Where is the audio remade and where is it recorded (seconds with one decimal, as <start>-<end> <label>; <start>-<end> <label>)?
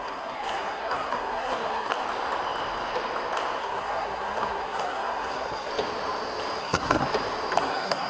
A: 0.0-1.9 remade; 1.9-3.6 recorded; 3.6-5.7 remade; 5.7-6.6 recorded; 6.6-7.0 remade; 7.0-7.6 recorded; 7.6-8.1 remade